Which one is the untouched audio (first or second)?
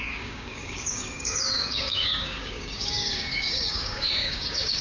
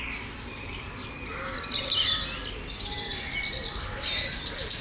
second